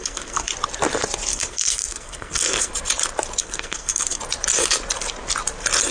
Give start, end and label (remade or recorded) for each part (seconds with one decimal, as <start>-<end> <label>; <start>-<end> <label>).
0.0-0.5 remade; 0.5-1.3 recorded; 1.3-2.7 remade; 2.7-3.4 recorded; 3.4-4.2 remade; 4.2-5.9 recorded